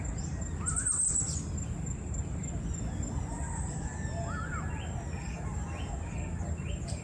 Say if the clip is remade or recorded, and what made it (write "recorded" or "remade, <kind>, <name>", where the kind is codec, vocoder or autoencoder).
recorded